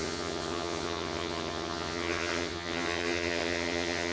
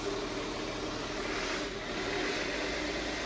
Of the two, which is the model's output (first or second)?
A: first